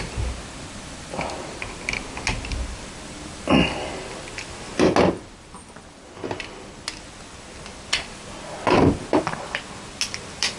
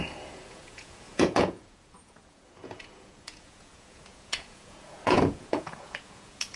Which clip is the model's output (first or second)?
second